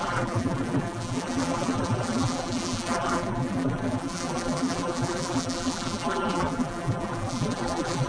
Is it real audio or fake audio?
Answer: fake